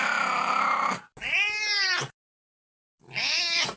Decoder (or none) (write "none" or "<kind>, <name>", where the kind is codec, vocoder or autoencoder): none